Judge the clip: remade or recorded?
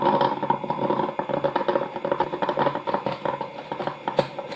recorded